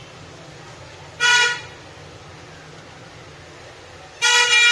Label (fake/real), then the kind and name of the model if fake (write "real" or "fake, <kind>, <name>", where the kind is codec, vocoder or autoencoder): real